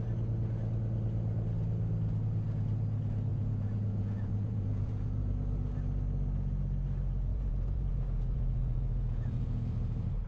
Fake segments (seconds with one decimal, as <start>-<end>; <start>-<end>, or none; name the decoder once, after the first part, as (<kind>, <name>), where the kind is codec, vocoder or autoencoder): 3.3-5.3 (vocoder, Vocos); 7.3-9.6